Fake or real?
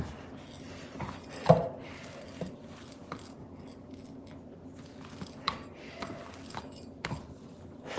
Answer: real